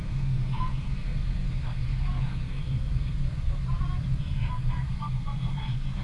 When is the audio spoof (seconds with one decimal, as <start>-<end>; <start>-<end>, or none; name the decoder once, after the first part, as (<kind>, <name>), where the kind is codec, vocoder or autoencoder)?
0.0-3.6 (codec, SNAC); 4.2-6.0